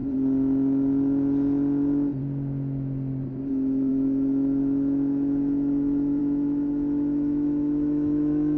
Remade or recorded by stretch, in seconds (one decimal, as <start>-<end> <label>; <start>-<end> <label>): 0.0-3.5 recorded; 3.5-8.6 remade